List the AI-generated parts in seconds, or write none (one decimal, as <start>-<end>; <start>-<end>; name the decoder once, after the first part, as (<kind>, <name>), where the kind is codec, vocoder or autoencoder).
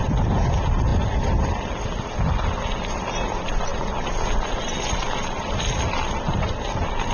none